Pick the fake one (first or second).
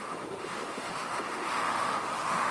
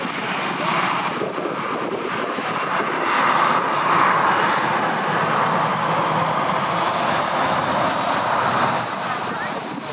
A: first